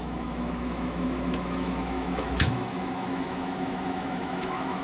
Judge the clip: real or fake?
fake